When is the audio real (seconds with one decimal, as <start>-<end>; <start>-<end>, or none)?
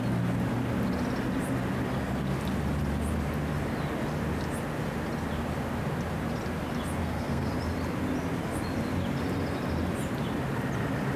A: 0.0-7.0; 7.5-11.2